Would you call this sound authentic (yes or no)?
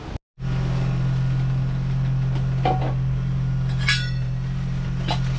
yes